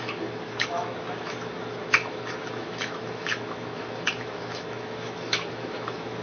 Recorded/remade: remade